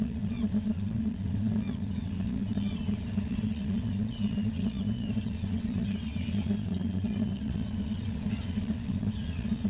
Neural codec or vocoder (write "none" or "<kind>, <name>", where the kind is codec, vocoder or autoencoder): vocoder, WaveNeXt